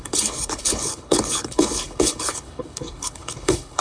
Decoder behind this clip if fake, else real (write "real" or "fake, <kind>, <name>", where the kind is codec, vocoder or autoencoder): fake, codec, HILCodec